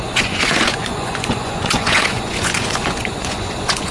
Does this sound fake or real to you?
fake